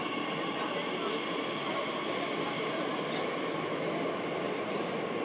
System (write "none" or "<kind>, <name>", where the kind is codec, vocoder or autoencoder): none